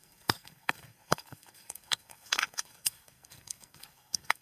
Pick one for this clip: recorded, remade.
remade